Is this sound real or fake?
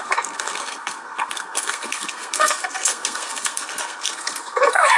fake